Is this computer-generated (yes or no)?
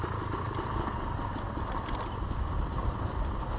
no